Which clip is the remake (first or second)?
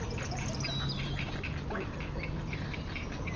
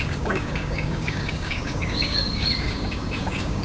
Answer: second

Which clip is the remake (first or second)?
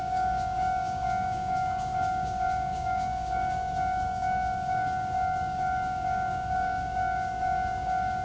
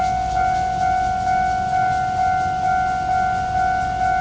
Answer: first